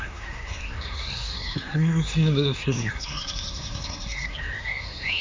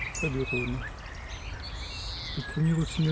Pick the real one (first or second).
second